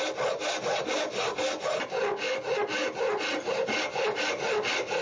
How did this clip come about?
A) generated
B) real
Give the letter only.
B